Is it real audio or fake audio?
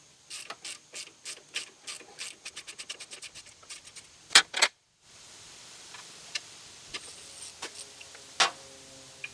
real